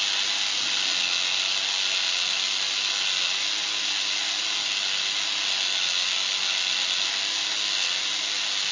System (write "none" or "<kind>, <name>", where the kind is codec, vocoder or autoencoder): none